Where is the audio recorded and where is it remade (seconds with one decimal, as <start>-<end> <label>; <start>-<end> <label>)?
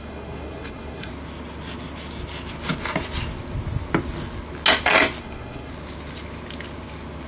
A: 0.0-1.1 remade; 1.1-5.2 recorded; 5.2-5.7 remade; 5.7-7.3 recorded